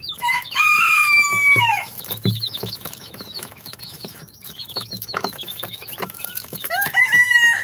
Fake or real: fake